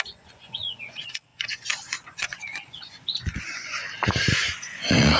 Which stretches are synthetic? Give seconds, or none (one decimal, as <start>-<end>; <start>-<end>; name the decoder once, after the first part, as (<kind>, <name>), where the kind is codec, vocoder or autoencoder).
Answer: 0.0-3.8 (vocoder, Vocos); 4.3-5.2